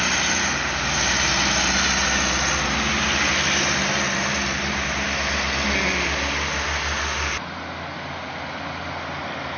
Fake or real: real